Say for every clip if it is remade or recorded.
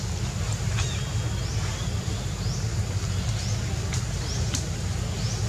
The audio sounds recorded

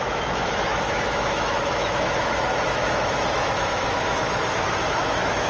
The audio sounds remade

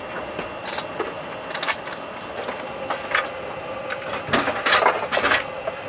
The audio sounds recorded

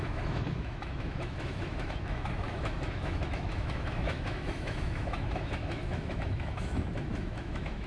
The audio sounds remade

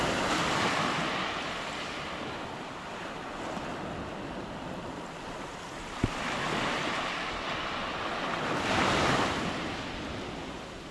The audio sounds recorded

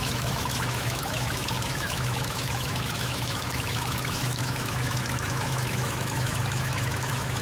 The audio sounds remade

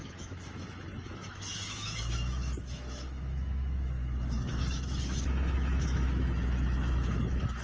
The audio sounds remade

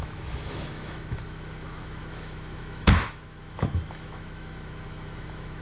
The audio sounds remade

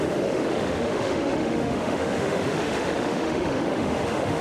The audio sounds remade